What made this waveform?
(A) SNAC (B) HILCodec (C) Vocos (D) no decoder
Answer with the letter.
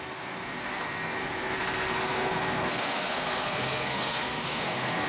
A